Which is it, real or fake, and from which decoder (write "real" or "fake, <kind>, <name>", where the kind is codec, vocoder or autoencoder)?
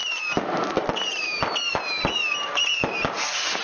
real